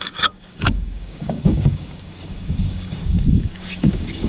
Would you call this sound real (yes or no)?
no